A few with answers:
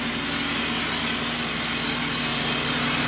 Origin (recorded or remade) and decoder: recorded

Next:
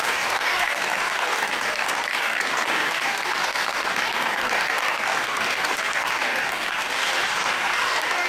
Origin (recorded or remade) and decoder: remade, codec, DAC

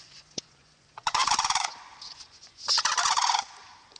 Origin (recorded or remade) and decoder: remade, vocoder, Vocos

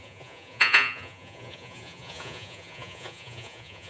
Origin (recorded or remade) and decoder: remade, vocoder, Vocos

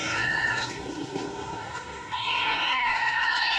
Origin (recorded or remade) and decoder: remade, codec, SNAC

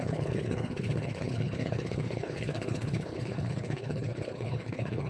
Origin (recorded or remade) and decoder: remade, codec, HILCodec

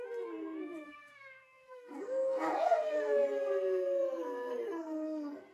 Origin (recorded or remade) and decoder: remade, codec, SNAC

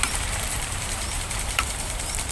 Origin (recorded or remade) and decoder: remade, vocoder, BigVGAN v2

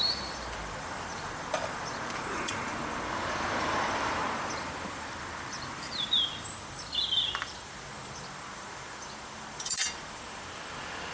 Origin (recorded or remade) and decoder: remade, vocoder, BigVGAN v2